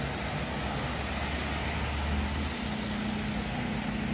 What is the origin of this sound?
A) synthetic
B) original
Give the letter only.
B